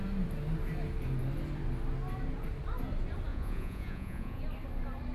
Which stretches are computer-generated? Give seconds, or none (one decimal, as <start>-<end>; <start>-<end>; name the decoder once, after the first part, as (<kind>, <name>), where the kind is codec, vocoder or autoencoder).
3.3-4.4 (vocoder, Vocos)